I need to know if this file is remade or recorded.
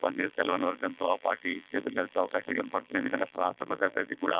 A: remade